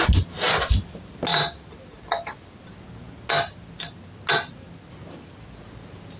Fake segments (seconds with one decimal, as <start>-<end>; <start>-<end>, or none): none